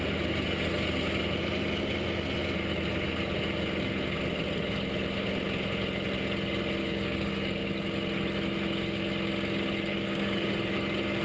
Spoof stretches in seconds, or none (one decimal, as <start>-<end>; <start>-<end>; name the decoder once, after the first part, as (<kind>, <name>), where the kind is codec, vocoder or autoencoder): 6.8-7.7 (codec, DAC); 9.9-10.5